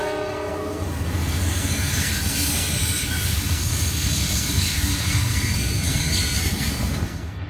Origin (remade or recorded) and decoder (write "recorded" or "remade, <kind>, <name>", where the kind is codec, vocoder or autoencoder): remade, codec, SNAC